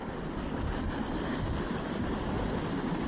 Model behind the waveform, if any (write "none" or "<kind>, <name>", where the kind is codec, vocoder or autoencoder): none